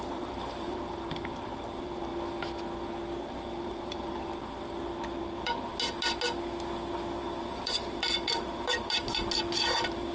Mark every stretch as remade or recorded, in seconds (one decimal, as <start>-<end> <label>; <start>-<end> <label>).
0.0-2.1 remade; 2.1-3.3 recorded; 3.3-4.3 remade; 4.3-5.2 recorded; 5.2-5.7 remade; 5.7-7.2 recorded; 7.2-9.2 remade; 9.2-9.7 recorded; 9.7-10.1 remade